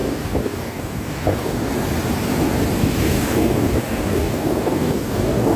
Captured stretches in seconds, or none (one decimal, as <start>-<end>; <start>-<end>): 1.7-2.8